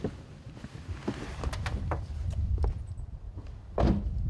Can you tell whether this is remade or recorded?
recorded